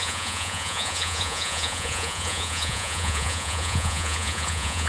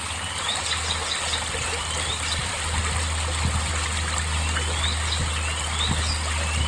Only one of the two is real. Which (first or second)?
second